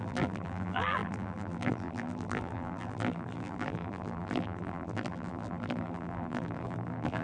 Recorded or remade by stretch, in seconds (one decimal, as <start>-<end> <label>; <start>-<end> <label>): 0.0-7.2 remade